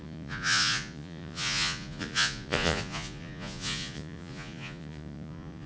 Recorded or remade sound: remade